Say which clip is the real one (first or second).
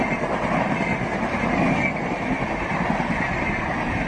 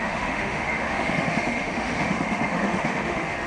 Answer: first